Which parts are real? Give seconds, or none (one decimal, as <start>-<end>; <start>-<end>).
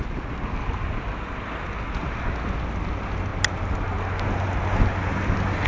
0.0-5.7